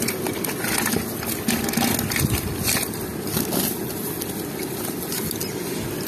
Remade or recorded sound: recorded